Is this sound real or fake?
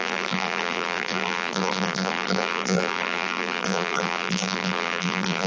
fake